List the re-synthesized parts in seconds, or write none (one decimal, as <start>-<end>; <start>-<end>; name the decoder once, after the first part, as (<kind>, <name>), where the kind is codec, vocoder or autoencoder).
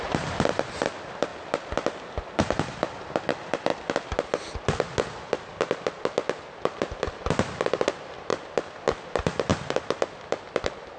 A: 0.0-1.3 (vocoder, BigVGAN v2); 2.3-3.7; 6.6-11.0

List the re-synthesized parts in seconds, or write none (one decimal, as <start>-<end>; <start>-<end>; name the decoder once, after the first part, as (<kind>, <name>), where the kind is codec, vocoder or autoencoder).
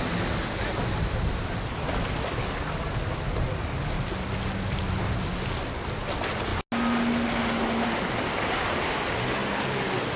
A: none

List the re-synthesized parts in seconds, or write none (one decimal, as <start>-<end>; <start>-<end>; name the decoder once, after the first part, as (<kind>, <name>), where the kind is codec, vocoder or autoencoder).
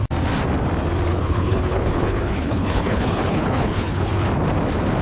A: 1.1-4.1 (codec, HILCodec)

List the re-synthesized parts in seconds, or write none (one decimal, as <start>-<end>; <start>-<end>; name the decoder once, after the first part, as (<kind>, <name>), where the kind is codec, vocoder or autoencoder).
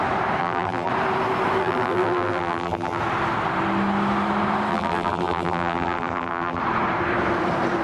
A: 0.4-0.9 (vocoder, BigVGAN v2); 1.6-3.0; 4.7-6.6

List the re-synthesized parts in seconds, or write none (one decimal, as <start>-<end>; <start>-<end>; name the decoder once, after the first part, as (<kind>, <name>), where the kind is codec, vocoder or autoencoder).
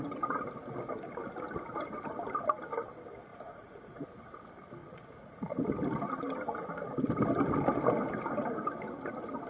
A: 3.3-3.9 (vocoder, Vocos); 4.8-5.6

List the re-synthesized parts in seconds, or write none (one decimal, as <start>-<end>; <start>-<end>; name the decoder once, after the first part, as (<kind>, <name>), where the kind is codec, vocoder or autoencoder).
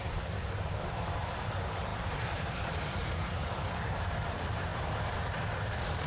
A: 0.0-6.1 (vocoder, BigVGAN v2)